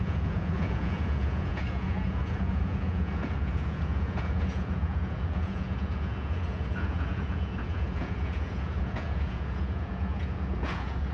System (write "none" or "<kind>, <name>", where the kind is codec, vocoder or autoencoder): vocoder, Vocos